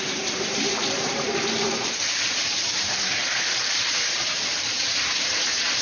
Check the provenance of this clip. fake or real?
fake